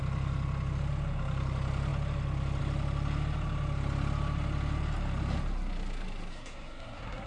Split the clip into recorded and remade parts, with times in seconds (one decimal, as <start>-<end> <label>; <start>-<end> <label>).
0.0-6.3 recorded; 6.3-7.3 remade